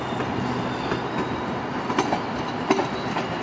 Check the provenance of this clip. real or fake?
real